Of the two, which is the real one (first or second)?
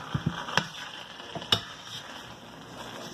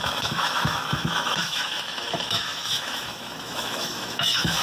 first